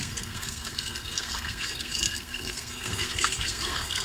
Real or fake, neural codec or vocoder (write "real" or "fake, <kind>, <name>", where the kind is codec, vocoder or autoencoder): fake, codec, SNAC